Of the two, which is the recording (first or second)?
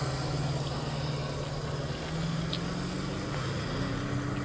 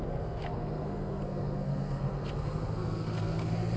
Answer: first